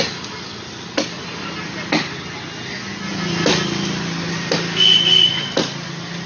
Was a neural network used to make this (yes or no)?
no